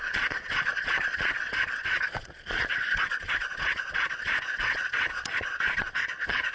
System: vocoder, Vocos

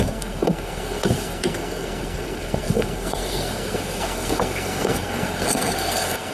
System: codec, SNAC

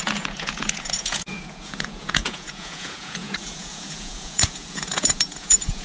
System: vocoder, Vocos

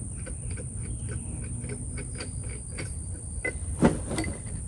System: none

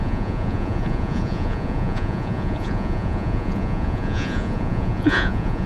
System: vocoder, Vocos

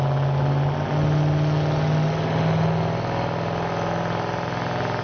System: none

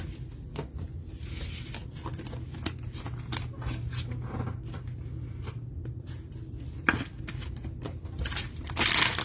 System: none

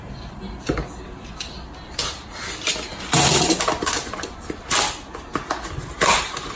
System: none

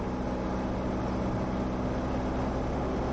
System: none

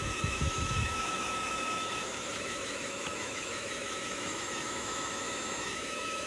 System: autoencoder, DAC-VAE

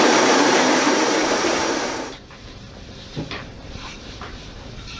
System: vocoder, BigVGAN v2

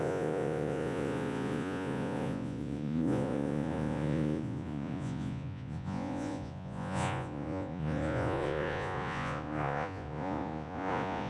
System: vocoder, Vocos